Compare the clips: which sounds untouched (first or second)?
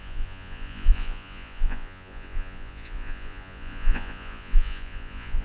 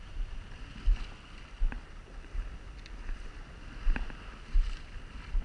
second